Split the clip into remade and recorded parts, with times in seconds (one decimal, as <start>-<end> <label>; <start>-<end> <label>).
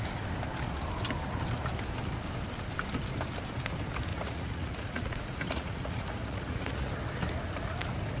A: 0.0-4.1 recorded; 4.1-6.9 remade; 6.9-8.2 recorded